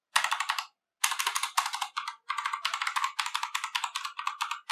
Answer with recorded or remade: recorded